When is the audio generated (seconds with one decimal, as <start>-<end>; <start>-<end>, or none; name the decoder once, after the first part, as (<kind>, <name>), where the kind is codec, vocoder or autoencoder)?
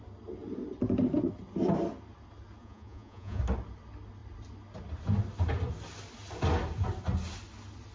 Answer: 2.6-3.4 (vocoder, Vocos)